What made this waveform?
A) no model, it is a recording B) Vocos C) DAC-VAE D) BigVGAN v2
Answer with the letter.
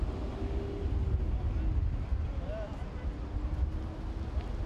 A